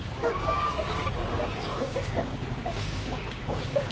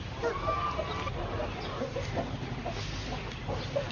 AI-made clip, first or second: first